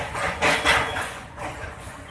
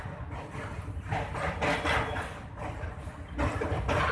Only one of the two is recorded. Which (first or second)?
second